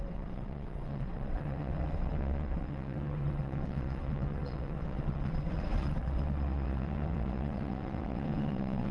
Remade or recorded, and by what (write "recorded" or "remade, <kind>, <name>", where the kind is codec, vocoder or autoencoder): remade, vocoder, WaveNeXt